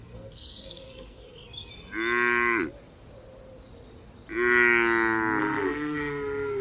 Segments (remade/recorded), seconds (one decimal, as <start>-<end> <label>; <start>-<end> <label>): 0.0-1.7 remade; 1.7-5.4 recorded; 5.4-6.6 remade